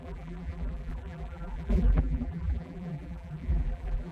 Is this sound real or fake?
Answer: fake